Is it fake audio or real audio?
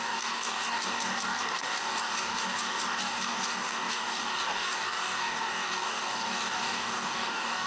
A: fake